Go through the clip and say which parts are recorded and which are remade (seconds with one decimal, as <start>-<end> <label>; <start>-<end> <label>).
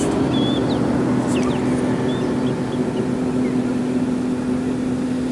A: 0.0-5.3 recorded